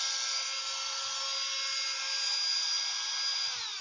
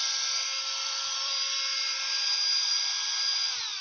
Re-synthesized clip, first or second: second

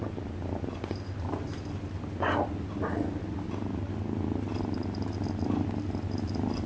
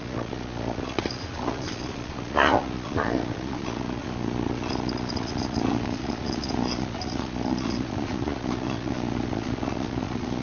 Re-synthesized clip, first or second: second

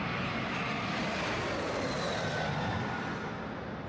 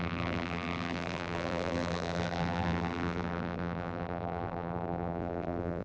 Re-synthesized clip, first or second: second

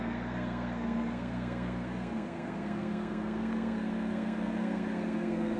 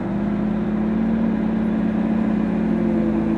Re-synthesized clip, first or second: first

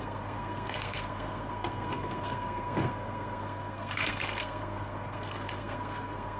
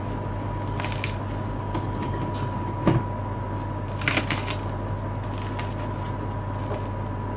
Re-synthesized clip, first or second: first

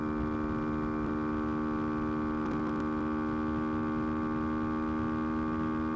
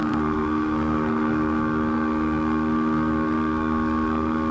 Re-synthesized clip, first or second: second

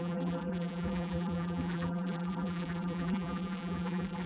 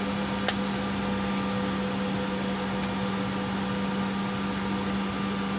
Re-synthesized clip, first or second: first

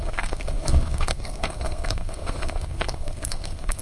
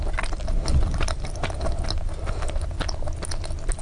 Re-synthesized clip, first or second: first